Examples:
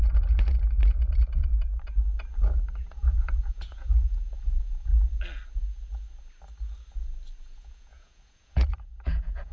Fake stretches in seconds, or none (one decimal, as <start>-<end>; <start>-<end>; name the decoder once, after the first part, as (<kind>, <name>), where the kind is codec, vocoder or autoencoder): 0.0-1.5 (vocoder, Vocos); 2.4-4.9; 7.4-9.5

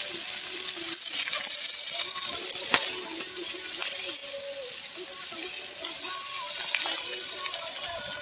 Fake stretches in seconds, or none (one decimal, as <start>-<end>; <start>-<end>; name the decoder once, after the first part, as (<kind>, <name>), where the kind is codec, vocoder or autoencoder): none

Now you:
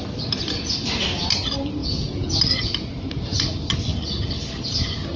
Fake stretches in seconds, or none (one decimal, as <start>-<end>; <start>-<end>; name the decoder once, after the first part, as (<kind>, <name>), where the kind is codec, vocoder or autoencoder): 1.8-2.3 (vocoder, Vocos)

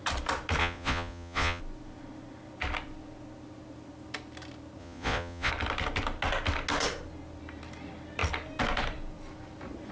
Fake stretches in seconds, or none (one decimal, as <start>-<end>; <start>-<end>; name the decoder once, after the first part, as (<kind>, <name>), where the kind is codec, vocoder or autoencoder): 0.6-1.6 (vocoder, Vocos); 4.8-5.5

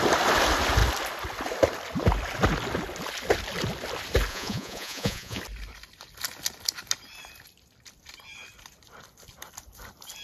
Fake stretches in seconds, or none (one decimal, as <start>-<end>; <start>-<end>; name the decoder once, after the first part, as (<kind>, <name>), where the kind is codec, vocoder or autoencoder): 4.3-5.4 (vocoder, Vocos)

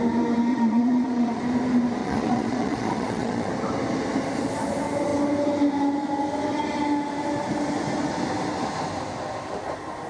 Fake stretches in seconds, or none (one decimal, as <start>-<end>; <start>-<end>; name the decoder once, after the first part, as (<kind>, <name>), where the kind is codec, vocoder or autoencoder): 0.5-1.4 (vocoder, Vocos); 2.0-3.5

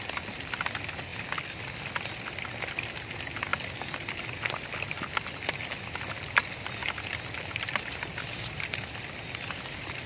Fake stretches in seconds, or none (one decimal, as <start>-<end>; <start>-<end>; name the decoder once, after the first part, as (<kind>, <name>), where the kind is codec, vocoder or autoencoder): none

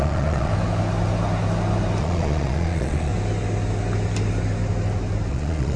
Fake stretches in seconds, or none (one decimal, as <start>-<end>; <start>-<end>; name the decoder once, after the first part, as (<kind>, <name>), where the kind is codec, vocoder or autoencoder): 0.0-0.5 (vocoder, Vocos); 2.0-3.1; 5.3-5.8